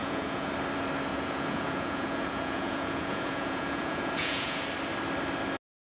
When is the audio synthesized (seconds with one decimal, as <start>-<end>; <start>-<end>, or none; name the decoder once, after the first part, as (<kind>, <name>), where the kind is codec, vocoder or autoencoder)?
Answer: 0.0-0.5 (vocoder, Vocos); 1.1-4.6